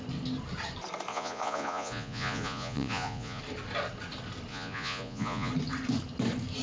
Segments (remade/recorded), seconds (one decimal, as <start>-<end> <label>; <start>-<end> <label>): 0.0-1.1 recorded; 1.1-3.4 remade; 3.4-4.5 recorded; 4.5-5.5 remade; 5.5-6.6 recorded